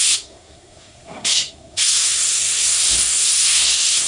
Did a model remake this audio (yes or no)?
yes